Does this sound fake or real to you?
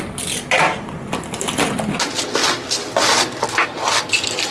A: real